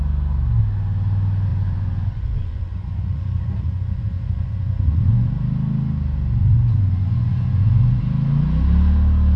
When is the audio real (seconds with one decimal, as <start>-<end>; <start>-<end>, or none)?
0.0-1.5; 5.3-6.4; 8.0-9.4